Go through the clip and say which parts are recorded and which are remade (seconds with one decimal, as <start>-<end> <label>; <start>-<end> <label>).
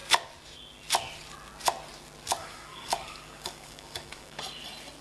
0.0-2.4 recorded; 2.4-4.4 remade; 4.4-5.0 recorded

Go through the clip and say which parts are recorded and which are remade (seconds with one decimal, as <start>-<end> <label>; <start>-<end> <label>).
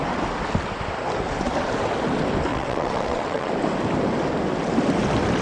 0.0-2.5 recorded; 2.5-3.5 remade; 3.5-5.4 recorded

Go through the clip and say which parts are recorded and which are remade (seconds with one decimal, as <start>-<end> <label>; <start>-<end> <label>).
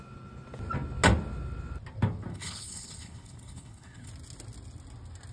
0.0-2.3 recorded; 2.3-4.1 remade; 4.1-5.3 recorded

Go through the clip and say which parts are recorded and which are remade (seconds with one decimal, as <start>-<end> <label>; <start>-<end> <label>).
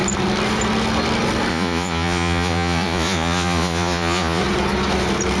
0.0-1.5 recorded; 1.5-4.4 remade; 4.4-5.4 recorded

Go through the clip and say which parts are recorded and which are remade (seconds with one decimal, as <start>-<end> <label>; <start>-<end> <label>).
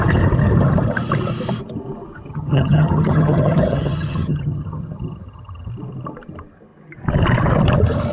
0.0-2.3 recorded; 2.3-5.7 remade; 5.7-8.1 recorded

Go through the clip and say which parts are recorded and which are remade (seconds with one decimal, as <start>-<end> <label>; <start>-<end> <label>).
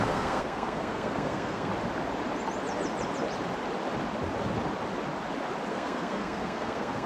0.0-1.7 remade; 1.7-5.7 recorded; 5.7-7.1 remade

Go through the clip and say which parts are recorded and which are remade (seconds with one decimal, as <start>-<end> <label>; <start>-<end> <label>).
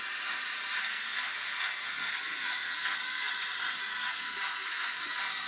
0.0-0.8 recorded; 0.8-3.3 remade; 3.3-3.7 recorded; 3.7-5.5 remade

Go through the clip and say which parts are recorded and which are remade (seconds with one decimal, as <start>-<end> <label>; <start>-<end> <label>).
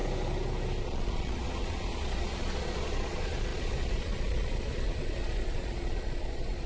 0.0-0.8 recorded; 0.8-6.7 remade